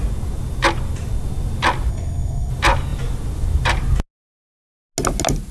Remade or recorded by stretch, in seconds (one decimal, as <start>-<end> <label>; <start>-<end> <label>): 0.0-1.9 recorded; 1.9-2.5 remade; 2.5-5.5 recorded